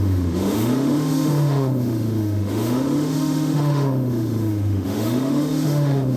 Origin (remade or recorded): remade